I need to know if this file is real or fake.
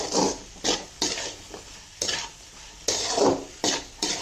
fake